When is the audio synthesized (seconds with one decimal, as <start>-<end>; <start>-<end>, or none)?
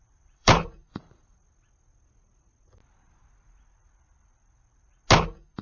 0.0-1.1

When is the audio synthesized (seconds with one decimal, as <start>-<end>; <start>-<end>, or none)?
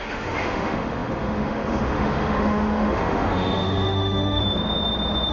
0.0-4.4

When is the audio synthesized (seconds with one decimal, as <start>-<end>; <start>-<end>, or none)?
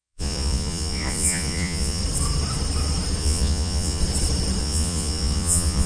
0.0-2.0; 3.2-4.0; 4.6-5.9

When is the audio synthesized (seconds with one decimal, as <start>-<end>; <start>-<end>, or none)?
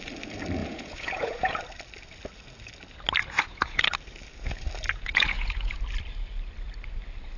0.6-1.6; 3.2-3.8; 4.9-5.8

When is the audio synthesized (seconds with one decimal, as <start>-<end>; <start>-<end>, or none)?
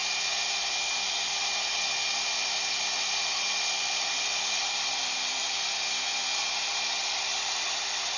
3.7-5.4; 6.5-8.2